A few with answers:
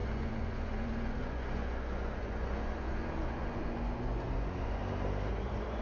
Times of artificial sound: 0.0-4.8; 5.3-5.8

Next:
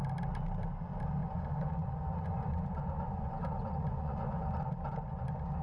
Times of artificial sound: 1.2-4.6

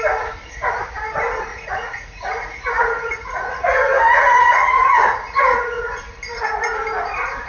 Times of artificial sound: 1.5-6.0